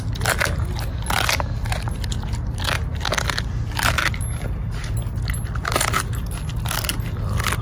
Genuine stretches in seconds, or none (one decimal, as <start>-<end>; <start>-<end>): 0.0-7.6